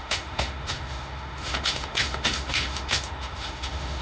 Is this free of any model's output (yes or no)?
no